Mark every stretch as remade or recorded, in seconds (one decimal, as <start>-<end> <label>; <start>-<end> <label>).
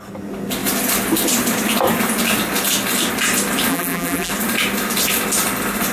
0.0-3.7 recorded; 3.7-4.3 remade; 4.3-5.9 recorded